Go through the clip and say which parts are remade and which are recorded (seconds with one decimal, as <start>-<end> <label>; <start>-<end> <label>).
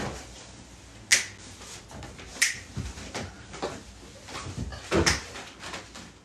0.0-2.3 recorded; 2.3-3.4 remade; 3.4-6.2 recorded